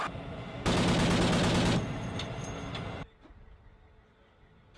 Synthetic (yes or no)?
no